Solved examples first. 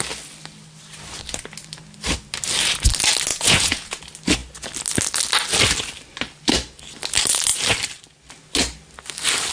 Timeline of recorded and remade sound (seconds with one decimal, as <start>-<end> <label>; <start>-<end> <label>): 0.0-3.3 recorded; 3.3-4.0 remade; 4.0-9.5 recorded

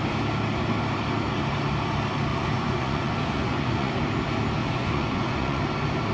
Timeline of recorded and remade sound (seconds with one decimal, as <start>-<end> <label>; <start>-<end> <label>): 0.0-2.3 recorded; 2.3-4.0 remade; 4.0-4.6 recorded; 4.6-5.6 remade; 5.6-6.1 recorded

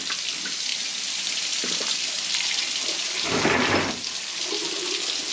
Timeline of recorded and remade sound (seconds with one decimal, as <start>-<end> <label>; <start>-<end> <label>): 0.0-5.3 recorded

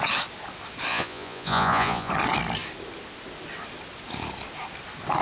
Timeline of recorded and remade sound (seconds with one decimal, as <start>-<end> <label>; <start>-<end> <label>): 0.0-0.9 recorded; 0.9-2.1 remade; 2.1-5.2 recorded